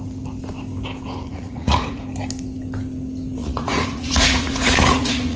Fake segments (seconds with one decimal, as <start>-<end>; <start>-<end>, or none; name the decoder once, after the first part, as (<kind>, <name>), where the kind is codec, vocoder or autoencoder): 1.3-2.0 (vocoder, Vocos); 3.4-5.4